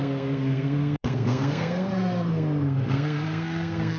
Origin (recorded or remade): remade